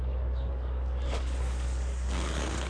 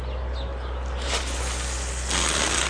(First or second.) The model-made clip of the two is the first